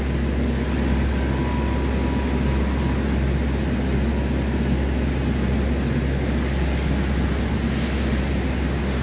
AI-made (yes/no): no